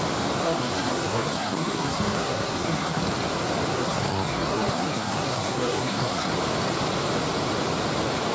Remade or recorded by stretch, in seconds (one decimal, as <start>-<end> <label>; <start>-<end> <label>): 0.0-0.4 recorded; 0.4-3.0 remade; 3.0-3.7 recorded; 3.7-6.3 remade; 6.3-8.3 recorded